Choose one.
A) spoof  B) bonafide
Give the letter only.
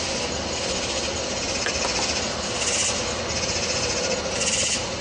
B